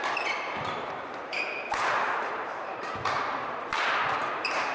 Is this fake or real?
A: fake